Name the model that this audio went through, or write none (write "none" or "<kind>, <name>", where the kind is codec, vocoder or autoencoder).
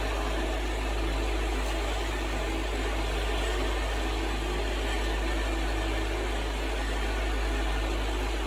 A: none